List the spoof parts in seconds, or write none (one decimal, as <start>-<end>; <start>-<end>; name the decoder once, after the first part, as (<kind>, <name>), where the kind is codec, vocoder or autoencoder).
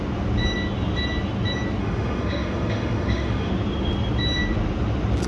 1.8-3.5 (autoencoder, DAC-VAE)